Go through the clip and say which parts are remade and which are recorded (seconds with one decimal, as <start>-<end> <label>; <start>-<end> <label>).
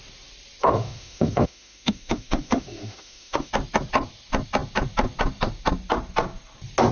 0.0-0.6 recorded; 0.6-3.5 remade; 3.5-6.9 recorded